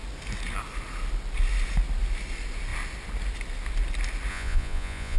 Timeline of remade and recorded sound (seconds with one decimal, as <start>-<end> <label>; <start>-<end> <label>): 0.0-4.3 recorded; 4.3-5.2 remade